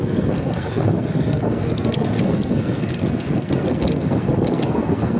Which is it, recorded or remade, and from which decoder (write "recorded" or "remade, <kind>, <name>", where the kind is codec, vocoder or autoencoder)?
remade, codec, SNAC